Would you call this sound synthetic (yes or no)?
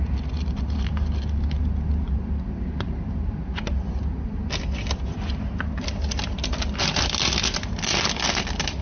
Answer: no